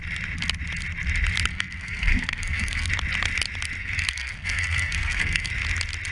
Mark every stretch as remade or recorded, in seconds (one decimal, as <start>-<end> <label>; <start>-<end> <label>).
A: 0.0-1.5 recorded; 1.5-2.9 remade; 2.9-3.8 recorded; 3.8-5.5 remade; 5.5-6.1 recorded